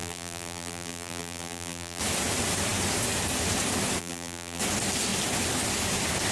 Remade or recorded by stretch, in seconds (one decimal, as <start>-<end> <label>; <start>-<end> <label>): 0.0-2.0 remade; 2.0-4.0 recorded; 4.0-4.6 remade; 4.6-6.3 recorded